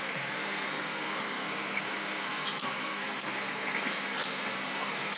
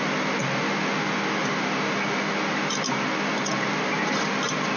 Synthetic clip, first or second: first